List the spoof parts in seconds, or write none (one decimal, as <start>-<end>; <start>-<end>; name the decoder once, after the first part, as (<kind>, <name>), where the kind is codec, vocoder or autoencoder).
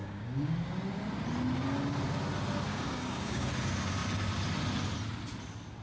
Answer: 0.0-0.5 (codec, DAC); 2.7-3.5